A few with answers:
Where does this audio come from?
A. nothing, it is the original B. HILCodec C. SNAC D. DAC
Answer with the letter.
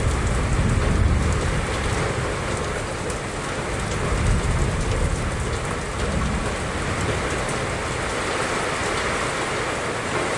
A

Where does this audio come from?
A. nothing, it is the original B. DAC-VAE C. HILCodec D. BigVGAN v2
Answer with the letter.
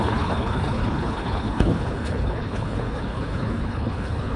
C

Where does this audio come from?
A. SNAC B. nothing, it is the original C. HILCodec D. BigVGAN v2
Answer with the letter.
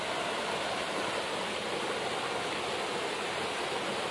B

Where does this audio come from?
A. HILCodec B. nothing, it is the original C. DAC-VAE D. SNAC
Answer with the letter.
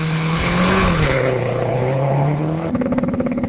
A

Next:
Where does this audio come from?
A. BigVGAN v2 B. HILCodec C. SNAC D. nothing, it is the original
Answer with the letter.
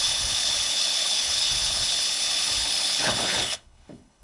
B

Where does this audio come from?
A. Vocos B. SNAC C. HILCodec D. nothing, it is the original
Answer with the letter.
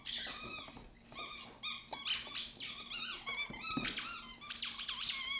D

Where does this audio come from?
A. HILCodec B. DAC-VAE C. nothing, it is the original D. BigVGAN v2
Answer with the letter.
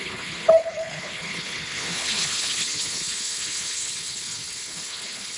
A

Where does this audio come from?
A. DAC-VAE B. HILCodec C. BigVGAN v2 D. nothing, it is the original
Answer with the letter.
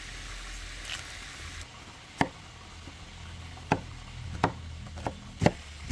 D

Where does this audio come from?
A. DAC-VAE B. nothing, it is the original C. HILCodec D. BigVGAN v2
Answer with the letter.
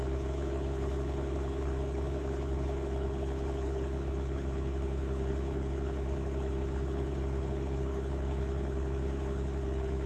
C